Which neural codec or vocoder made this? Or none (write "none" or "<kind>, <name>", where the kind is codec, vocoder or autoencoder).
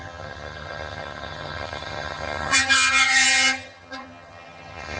vocoder, HiFi-GAN